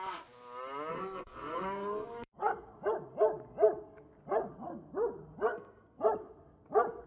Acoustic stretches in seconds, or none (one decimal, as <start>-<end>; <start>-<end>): 0.0-0.9; 2.5-5.5; 6.0-7.1